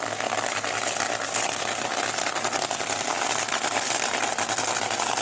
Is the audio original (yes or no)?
yes